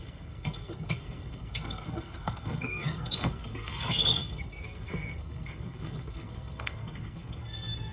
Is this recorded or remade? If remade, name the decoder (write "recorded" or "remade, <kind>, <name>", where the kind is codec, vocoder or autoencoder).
remade, codec, SNAC